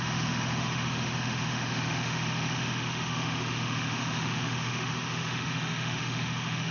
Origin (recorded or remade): remade